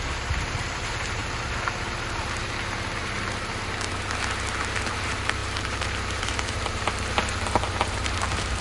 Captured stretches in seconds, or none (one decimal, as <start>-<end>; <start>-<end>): 1.2-4.9